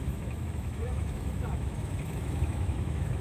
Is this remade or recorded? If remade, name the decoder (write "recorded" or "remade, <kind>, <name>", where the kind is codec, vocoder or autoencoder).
remade, autoencoder, DAC-VAE